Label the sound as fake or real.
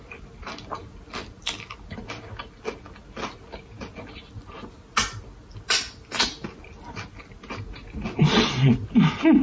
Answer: real